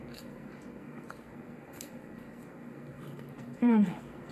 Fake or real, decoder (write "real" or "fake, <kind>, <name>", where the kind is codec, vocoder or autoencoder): fake, codec, SNAC